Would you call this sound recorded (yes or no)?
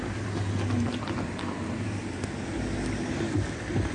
yes